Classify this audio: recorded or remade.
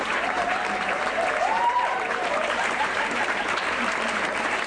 remade